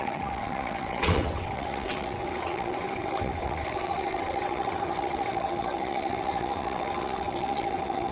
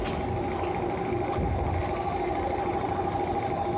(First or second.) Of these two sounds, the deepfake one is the first